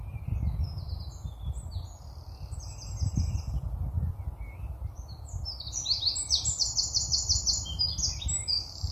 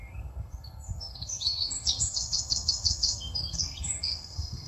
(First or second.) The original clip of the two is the first